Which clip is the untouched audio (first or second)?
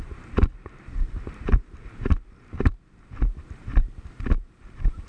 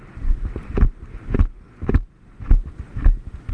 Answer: second